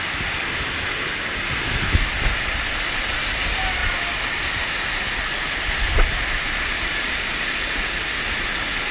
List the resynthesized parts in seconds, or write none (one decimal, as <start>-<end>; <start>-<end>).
none